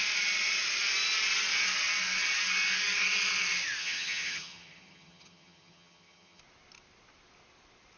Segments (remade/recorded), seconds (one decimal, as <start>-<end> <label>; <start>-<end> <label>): 0.0-3.8 recorded; 3.8-6.4 remade; 6.4-8.0 recorded